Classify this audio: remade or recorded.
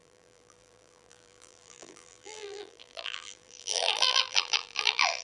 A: remade